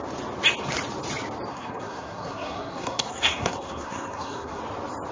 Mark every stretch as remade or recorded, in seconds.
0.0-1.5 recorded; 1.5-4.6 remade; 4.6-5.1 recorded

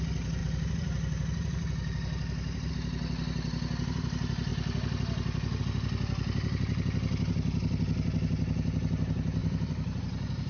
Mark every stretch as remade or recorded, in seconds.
0.0-0.4 recorded; 0.4-2.7 remade; 2.7-9.4 recorded; 9.4-10.0 remade; 10.0-10.5 recorded

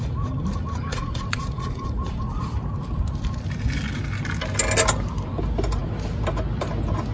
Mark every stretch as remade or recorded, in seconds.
0.0-0.9 recorded; 0.9-2.6 remade; 2.6-7.1 recorded